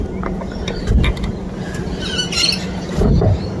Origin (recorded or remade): recorded